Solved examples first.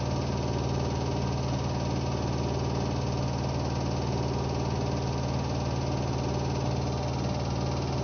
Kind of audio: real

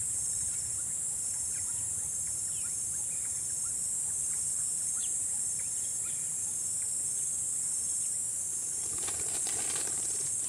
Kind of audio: fake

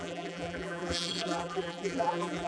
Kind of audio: fake